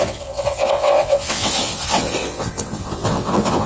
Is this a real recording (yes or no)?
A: no